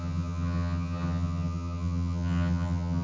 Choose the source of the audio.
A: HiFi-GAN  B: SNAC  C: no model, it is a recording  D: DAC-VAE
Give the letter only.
A